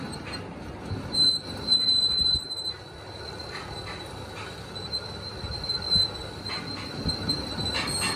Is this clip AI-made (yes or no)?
no